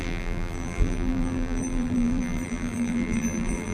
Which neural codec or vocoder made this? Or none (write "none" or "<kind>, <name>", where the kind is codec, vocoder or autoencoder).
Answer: vocoder, BigVGAN v2